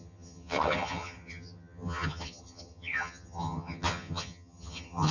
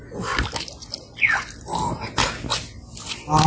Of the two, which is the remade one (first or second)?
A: first